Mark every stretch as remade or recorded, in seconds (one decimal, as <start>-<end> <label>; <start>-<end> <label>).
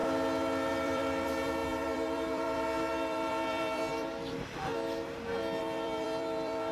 0.0-0.7 recorded; 0.7-4.7 remade; 4.7-5.6 recorded; 5.6-6.7 remade